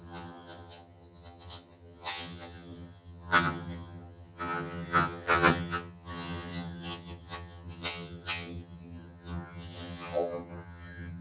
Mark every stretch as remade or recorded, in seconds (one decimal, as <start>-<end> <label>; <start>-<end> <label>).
0.0-11.2 remade